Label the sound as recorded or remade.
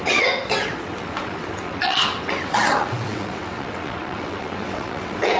remade